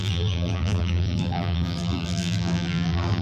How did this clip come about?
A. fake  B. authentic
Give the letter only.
A